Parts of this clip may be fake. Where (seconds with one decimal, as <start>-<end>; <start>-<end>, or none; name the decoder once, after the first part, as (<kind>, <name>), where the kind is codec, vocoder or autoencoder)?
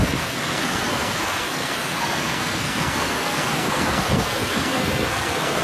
0.0-5.6 (codec, SNAC)